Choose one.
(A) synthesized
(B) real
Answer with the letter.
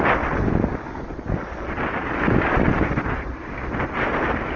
B